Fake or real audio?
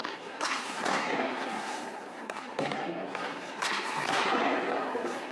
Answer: fake